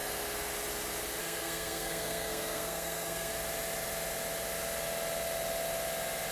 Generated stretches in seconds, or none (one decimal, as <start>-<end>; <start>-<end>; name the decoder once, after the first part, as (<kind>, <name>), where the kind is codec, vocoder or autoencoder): 1.2-3.3 (codec, SNAC)